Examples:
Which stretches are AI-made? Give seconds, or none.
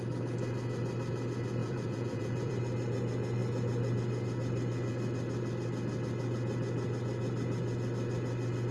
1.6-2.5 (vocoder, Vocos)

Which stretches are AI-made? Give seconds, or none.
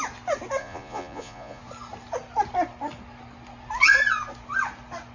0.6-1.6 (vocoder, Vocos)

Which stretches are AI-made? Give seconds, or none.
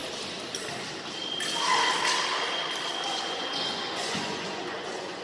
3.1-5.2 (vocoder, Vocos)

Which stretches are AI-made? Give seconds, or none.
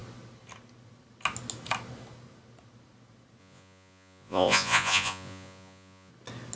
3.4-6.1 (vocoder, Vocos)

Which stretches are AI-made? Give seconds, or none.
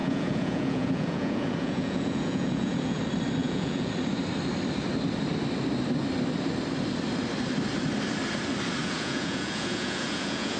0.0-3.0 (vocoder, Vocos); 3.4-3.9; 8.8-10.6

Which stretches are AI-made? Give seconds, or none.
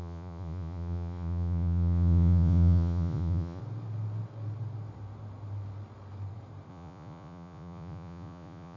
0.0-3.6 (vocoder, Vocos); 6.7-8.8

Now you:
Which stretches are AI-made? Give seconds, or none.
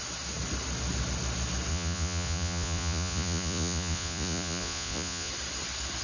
1.7-5.3 (vocoder, Vocos)